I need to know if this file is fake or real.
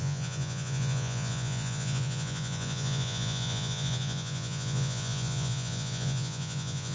fake